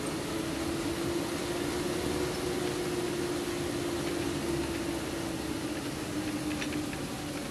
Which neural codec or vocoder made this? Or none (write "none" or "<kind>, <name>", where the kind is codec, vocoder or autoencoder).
none